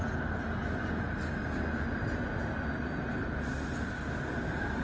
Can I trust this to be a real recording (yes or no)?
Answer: yes